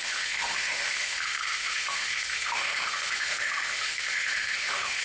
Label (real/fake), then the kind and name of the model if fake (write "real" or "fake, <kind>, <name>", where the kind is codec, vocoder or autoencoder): fake, autoencoder, DAC-VAE